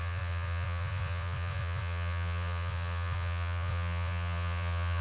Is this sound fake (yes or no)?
yes